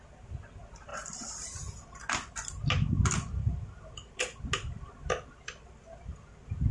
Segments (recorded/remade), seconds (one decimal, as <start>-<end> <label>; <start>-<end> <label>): 0.0-6.7 recorded